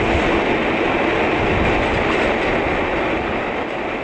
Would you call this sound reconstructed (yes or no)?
no